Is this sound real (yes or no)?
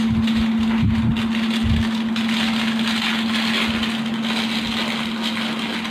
yes